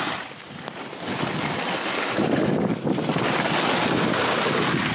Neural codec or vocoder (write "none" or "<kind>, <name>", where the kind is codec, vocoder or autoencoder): none